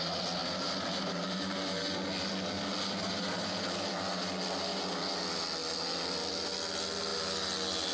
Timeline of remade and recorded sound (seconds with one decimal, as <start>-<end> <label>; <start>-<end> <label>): 0.0-7.9 recorded